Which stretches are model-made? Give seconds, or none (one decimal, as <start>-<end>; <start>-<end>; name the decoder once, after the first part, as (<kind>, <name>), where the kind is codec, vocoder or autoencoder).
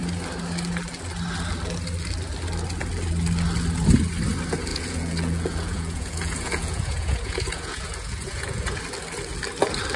4.7-8.8 (vocoder, Vocos)